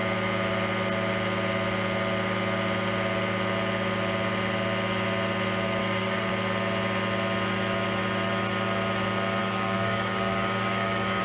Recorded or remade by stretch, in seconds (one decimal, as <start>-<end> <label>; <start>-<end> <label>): 0.0-5.8 recorded; 5.8-6.3 remade; 6.3-9.4 recorded; 9.4-11.2 remade